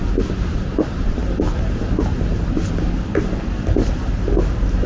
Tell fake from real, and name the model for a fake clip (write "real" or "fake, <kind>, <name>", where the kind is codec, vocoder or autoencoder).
real